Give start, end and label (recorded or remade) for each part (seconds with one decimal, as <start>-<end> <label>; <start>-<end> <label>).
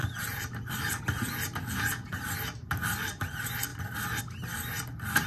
0.0-1.0 remade; 1.0-5.3 recorded